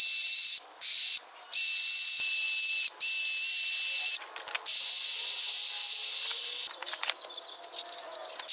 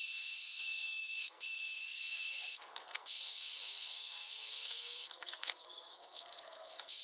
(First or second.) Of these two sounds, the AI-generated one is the second